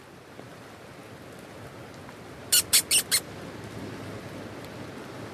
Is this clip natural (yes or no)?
yes